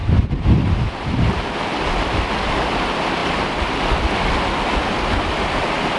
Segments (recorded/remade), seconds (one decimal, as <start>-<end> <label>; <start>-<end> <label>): 0.0-1.7 remade; 1.7-6.0 recorded